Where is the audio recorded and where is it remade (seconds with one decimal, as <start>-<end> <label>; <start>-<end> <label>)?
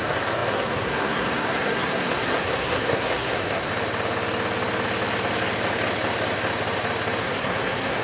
0.0-3.7 remade; 3.7-7.2 recorded; 7.2-8.0 remade